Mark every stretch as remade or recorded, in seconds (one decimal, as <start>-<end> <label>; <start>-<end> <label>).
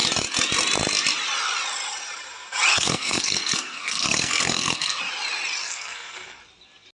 0.0-2.7 recorded; 2.7-5.0 remade; 5.0-5.6 recorded; 5.6-6.4 remade; 6.4-6.9 recorded